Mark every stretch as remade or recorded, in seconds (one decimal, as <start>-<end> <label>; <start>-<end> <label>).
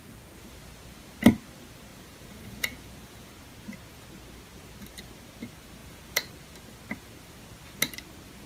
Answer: 0.0-1.9 recorded; 1.9-3.3 remade; 3.3-5.8 recorded; 5.8-6.3 remade; 6.3-8.5 recorded